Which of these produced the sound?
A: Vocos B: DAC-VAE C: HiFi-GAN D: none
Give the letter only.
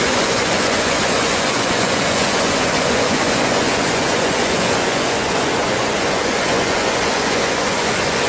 A